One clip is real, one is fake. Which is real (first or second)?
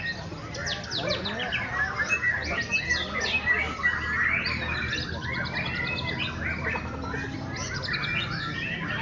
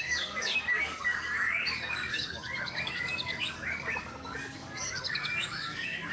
first